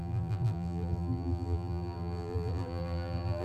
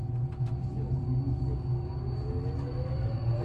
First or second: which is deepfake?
first